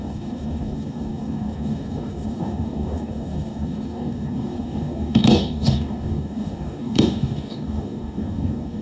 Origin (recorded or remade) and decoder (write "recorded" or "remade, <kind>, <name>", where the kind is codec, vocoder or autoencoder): remade, codec, DAC